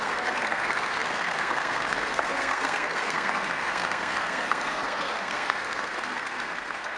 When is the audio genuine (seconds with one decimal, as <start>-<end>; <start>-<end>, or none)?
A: none